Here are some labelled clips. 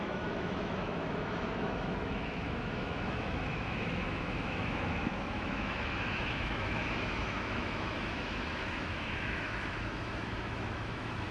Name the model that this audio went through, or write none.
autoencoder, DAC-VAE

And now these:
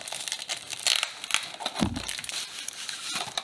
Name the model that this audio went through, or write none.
none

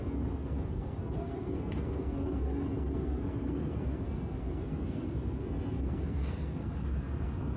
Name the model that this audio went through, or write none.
codec, SNAC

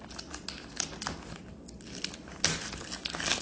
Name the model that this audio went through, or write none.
none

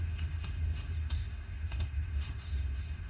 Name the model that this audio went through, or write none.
autoencoder, DAC-VAE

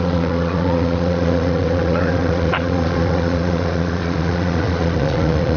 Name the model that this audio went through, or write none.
vocoder, Vocos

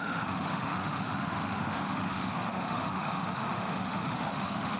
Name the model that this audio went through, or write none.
autoencoder, DAC-VAE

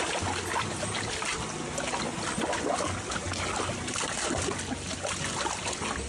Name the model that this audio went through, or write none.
none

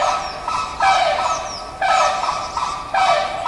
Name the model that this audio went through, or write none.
none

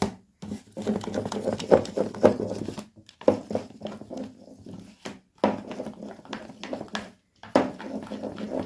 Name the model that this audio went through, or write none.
none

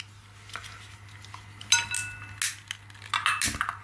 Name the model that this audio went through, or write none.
none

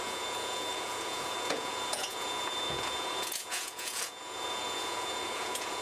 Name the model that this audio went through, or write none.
vocoder, Vocos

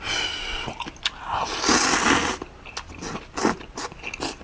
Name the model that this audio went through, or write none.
none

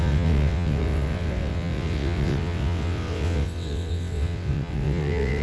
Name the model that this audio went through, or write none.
vocoder, WaveNeXt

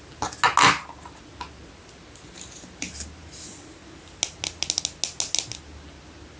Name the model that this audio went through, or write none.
none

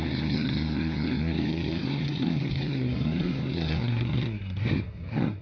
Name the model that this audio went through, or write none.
codec, SNAC